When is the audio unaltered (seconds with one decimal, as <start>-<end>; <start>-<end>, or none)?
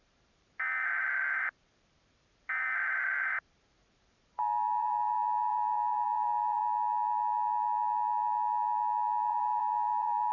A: 6.6-9.3